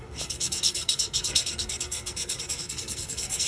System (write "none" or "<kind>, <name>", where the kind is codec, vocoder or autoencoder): codec, SNAC